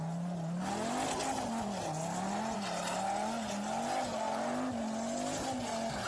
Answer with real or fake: real